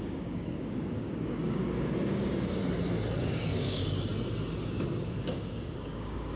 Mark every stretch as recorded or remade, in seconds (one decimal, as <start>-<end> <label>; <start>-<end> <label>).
0.0-2.6 remade; 2.6-3.2 recorded; 3.2-4.1 remade; 4.1-4.6 recorded; 4.6-6.4 remade